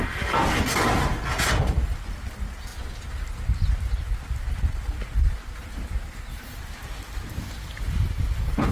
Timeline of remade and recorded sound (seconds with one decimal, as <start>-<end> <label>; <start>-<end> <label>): 0.0-8.7 recorded